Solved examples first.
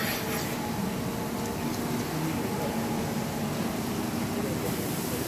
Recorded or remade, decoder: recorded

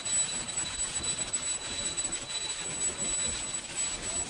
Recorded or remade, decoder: recorded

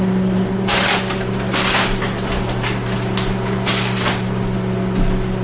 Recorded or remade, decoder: recorded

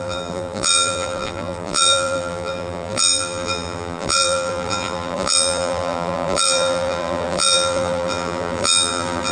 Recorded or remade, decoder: remade, vocoder, BigVGAN v2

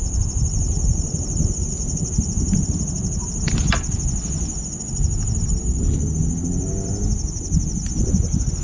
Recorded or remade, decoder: recorded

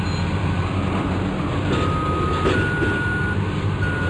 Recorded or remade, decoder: recorded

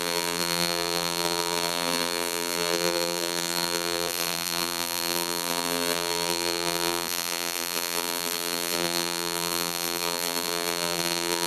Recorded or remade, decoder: remade, vocoder, BigVGAN v2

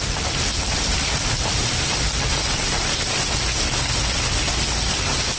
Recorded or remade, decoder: recorded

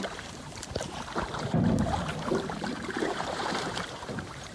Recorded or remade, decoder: remade, vocoder, BigVGAN v2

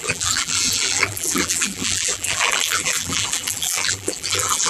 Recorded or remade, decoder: remade, vocoder, BigVGAN v2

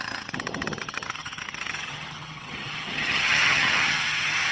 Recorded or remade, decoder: remade, vocoder, HiFi-GAN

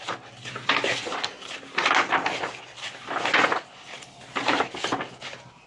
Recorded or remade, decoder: recorded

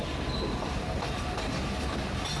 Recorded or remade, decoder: recorded